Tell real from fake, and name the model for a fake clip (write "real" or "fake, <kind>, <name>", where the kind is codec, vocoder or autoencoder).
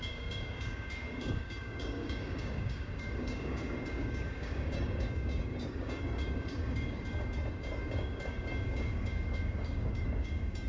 fake, codec, DAC